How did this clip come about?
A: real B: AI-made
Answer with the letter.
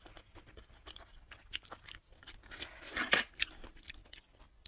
A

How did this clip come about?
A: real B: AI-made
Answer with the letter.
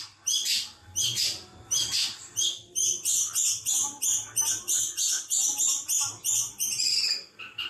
B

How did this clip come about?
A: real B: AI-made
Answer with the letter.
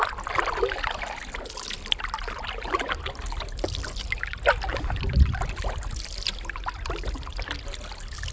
A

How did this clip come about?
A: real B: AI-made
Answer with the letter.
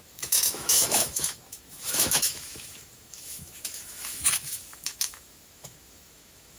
B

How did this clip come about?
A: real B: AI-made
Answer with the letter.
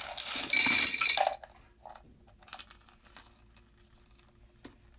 A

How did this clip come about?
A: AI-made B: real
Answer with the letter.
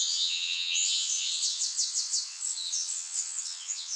A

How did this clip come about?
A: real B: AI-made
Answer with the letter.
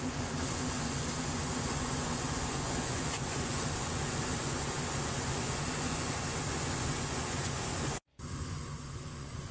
B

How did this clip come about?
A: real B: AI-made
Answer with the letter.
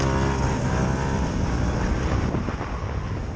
A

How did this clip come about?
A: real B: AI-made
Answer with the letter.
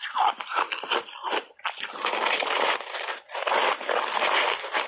A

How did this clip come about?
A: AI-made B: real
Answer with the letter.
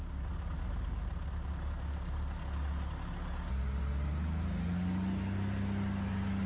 B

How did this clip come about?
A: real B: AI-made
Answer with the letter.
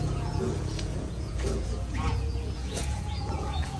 B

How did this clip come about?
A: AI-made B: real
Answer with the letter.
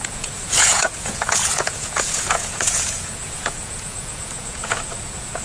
A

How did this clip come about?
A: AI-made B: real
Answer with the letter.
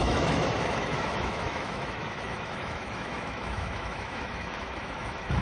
A